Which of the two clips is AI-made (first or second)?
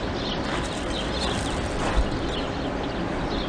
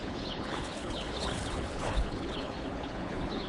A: second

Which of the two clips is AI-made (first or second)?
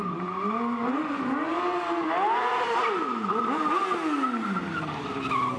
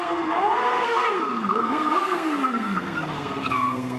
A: second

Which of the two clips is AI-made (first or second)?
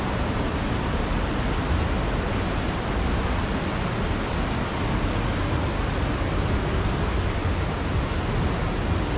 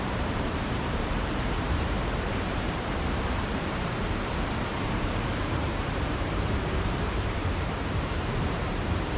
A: second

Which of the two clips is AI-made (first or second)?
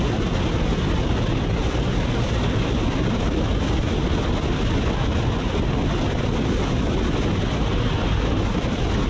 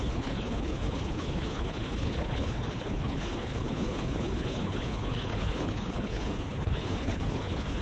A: second